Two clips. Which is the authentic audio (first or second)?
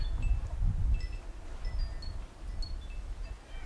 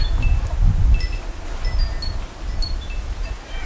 first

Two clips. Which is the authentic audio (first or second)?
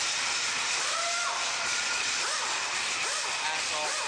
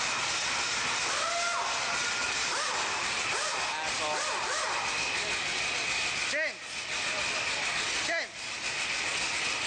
second